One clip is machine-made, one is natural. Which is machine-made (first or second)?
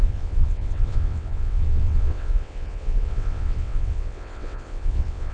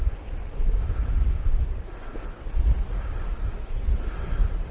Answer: first